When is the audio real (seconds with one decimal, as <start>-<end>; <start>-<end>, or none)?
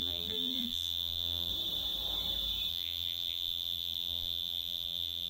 1.5-2.7